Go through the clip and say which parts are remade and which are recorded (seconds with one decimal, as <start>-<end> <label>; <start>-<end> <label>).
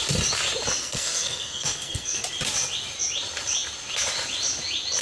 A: 0.0-0.8 recorded; 0.8-2.2 remade; 2.2-5.0 recorded